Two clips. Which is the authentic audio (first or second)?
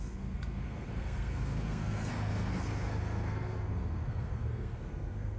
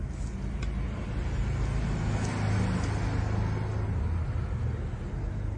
second